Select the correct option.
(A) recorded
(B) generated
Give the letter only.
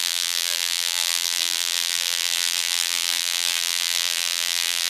B